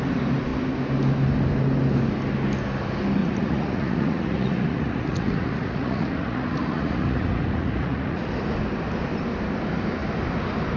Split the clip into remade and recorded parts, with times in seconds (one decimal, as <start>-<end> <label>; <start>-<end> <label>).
0.0-3.2 recorded; 3.2-8.3 remade; 8.3-10.8 recorded